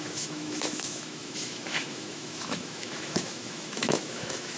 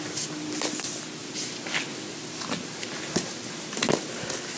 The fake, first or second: first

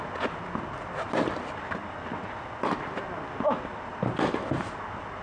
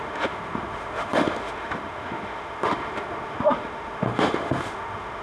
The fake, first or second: second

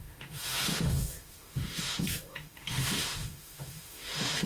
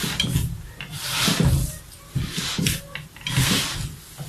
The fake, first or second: first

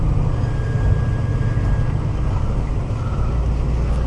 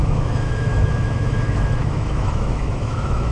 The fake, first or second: second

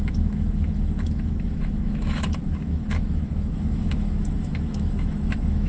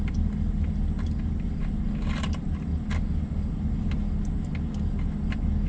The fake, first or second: first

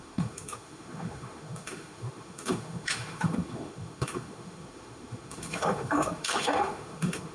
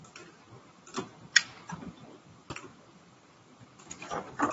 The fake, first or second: first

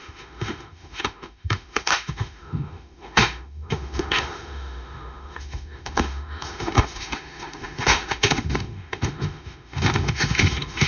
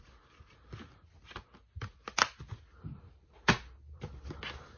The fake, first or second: first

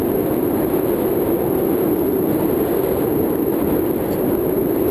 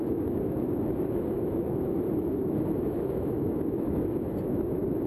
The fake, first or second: second